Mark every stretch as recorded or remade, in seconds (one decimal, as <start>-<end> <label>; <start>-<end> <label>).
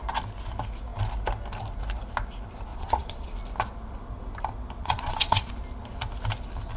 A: 0.0-2.7 recorded; 2.7-3.3 remade; 3.3-4.8 recorded; 4.8-5.5 remade; 5.5-6.8 recorded